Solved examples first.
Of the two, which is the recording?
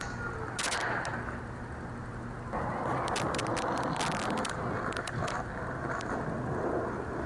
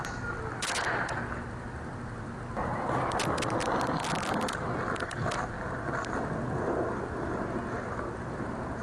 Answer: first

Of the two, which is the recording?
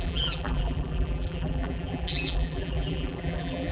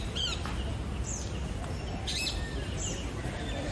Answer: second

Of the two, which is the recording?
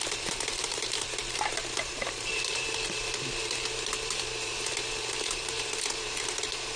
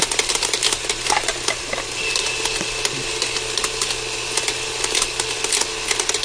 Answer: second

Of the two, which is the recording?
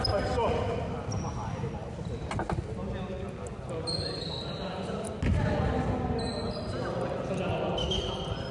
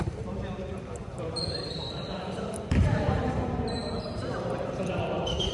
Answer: first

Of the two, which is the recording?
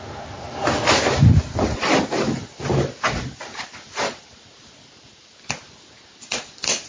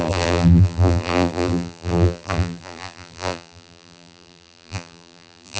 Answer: first